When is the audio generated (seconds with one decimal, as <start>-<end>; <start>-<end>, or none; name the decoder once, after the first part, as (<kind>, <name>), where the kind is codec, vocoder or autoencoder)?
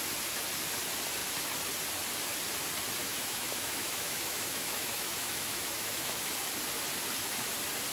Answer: 3.0-6.3 (autoencoder, DAC-VAE)